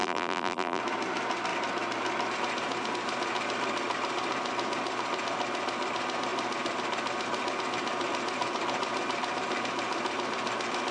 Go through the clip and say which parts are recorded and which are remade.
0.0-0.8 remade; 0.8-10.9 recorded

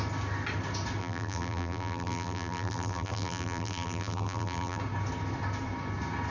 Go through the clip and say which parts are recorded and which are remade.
0.0-1.0 recorded; 1.0-4.8 remade; 4.8-6.3 recorded

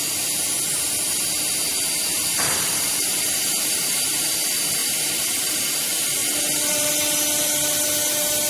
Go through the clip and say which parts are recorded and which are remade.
0.0-2.1 recorded; 2.1-4.3 remade; 4.3-4.8 recorded; 4.8-5.6 remade; 5.6-6.2 recorded; 6.2-6.9 remade; 6.9-8.5 recorded

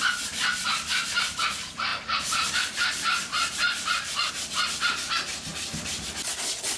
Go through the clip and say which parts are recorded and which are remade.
0.0-1.9 recorded; 1.9-2.5 remade; 2.5-3.3 recorded; 3.3-4.3 remade; 4.3-6.8 recorded

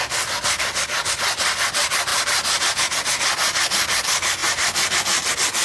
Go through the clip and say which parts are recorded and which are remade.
0.0-5.6 recorded

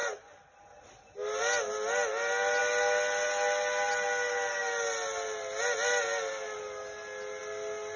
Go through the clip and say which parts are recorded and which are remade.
0.0-1.4 remade; 1.4-8.0 recorded